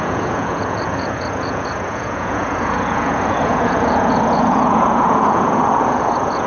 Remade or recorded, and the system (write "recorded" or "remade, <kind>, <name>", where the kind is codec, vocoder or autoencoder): remade, vocoder, Vocos